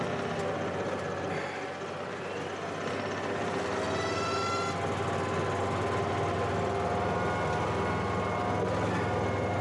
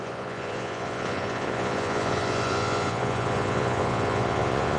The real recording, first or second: first